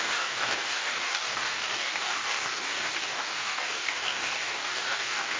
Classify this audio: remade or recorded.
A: remade